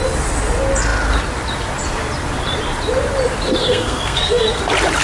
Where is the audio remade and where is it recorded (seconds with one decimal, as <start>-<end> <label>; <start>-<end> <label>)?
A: 0.0-3.6 recorded; 3.6-4.6 remade; 4.6-5.0 recorded